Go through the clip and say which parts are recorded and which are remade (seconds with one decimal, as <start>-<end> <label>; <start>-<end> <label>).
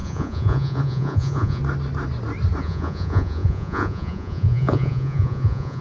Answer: 0.0-1.6 remade; 1.6-2.6 recorded; 2.6-5.8 remade